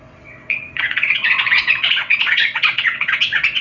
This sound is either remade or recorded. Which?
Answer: remade